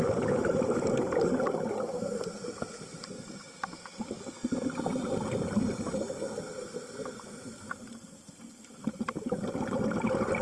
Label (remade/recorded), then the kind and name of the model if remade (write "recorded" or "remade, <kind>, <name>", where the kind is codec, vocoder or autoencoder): recorded